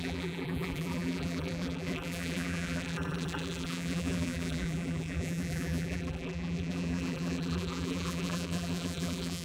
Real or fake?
fake